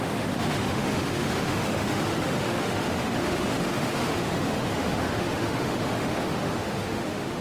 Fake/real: fake